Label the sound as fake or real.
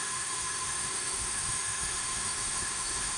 fake